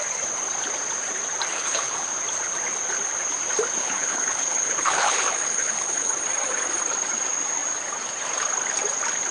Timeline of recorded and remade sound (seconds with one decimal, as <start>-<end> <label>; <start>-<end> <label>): 0.0-1.5 recorded; 1.5-2.1 remade; 2.1-3.8 recorded; 3.8-6.2 remade; 6.2-9.3 recorded